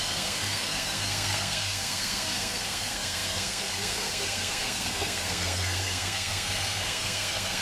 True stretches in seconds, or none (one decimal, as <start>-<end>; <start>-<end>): none